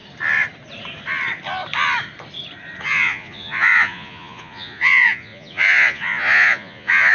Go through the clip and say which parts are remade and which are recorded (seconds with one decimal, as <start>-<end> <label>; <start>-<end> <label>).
0.0-2.8 recorded; 2.8-7.1 remade